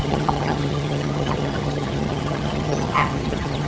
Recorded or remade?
remade